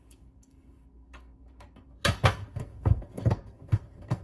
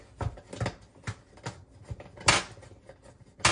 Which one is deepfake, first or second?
first